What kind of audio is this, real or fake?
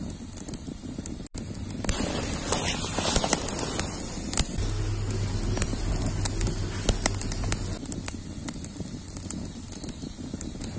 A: real